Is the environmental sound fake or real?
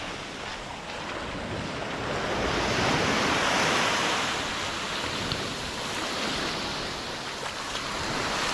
real